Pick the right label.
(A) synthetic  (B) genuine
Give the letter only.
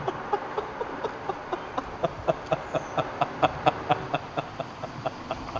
B